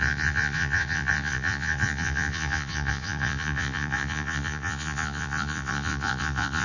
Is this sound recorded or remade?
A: remade